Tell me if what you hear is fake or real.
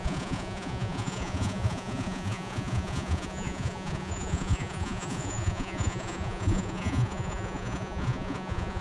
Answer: fake